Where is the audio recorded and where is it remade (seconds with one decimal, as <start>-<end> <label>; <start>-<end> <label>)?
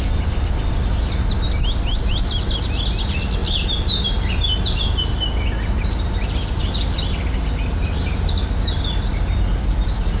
0.0-9.1 recorded; 9.1-10.2 remade